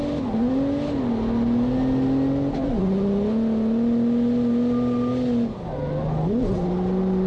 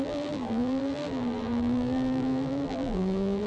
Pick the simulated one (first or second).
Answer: second